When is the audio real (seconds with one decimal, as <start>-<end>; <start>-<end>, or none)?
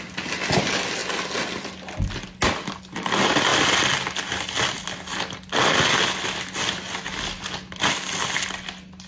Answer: 0.0-9.1